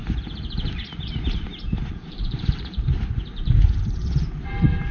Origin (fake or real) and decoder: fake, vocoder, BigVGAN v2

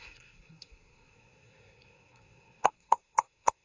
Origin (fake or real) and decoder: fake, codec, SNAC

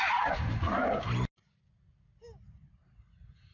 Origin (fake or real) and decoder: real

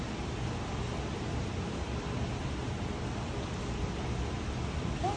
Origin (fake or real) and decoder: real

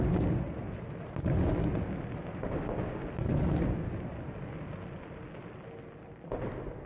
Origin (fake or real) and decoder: real